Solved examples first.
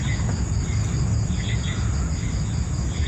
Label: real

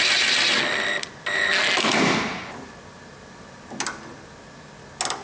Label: real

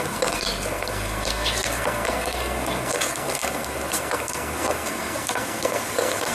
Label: fake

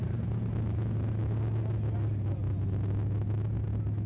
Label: real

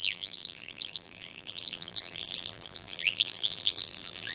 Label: fake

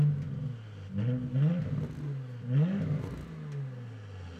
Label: real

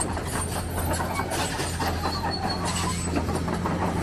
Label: real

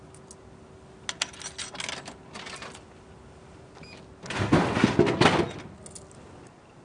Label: real